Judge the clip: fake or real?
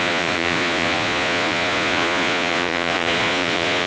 fake